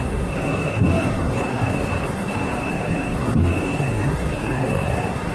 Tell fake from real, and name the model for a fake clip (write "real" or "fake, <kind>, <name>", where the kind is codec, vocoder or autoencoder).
fake, codec, SNAC